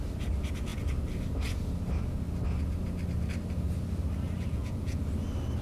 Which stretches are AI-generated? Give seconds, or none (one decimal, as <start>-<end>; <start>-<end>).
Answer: 4.5-5.0